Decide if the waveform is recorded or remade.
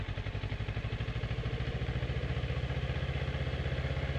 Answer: recorded